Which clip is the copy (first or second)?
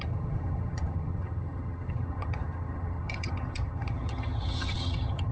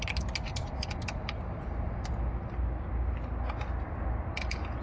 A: first